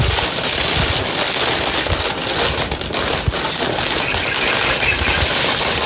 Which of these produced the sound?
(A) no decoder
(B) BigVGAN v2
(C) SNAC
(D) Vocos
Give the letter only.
A